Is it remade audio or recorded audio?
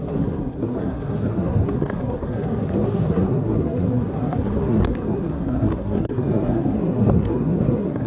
remade